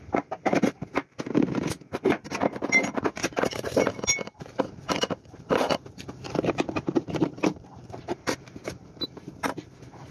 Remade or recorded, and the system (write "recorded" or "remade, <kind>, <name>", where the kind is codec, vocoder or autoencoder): remade, vocoder, BigVGAN v2